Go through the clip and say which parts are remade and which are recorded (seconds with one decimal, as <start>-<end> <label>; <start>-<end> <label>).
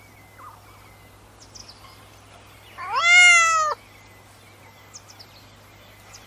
0.0-1.6 recorded; 1.6-3.0 remade; 3.0-3.7 recorded; 3.7-4.6 remade; 4.6-6.3 recorded